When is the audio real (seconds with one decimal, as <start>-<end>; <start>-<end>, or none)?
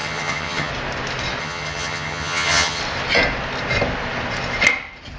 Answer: 0.7-1.4; 2.8-5.2